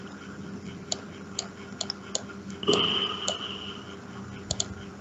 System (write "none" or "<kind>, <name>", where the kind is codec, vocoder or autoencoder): none